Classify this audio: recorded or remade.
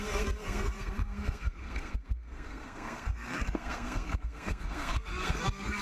remade